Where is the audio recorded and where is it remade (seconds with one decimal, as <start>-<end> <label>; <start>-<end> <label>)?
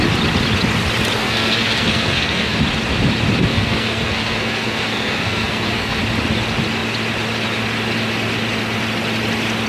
0.0-1.2 recorded; 1.2-2.6 remade; 2.6-3.5 recorded; 3.5-6.0 remade; 6.0-9.7 recorded